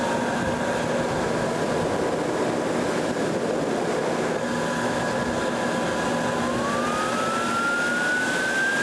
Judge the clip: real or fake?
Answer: real